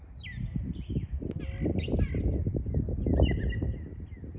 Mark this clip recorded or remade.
recorded